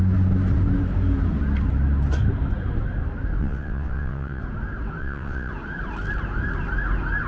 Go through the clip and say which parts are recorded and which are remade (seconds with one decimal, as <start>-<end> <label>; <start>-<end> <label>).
0.0-3.4 recorded; 3.4-4.4 remade; 4.4-5.0 recorded; 5.0-5.5 remade; 5.5-7.3 recorded